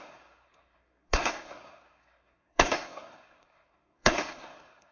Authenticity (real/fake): fake